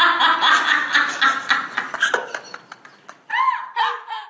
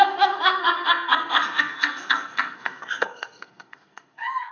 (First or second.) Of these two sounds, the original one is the first